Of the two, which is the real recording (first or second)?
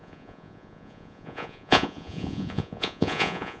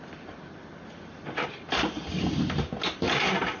second